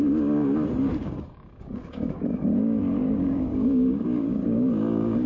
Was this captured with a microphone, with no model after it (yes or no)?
no